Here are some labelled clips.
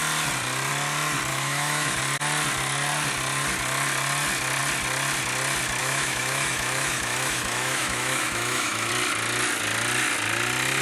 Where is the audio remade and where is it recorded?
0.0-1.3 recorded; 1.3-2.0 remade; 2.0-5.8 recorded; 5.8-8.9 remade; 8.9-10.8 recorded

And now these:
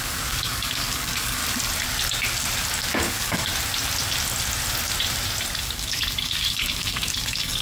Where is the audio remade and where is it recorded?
0.0-1.4 remade; 1.4-2.9 recorded; 2.9-3.5 remade; 3.5-5.6 recorded; 5.6-7.6 remade

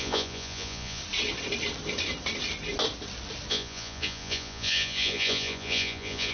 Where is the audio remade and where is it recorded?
0.0-1.0 remade; 1.0-3.5 recorded; 3.5-6.3 remade

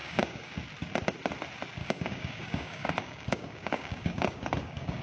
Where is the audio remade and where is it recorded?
0.0-0.5 remade; 0.5-1.8 recorded; 1.8-5.0 remade